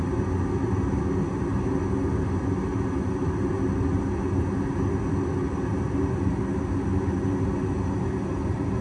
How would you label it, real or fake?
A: real